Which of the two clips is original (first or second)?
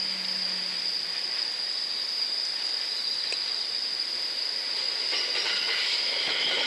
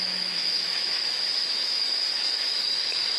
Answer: first